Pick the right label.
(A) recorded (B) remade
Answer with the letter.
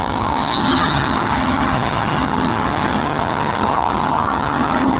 B